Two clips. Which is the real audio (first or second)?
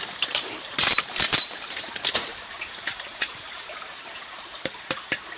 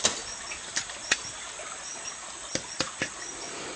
second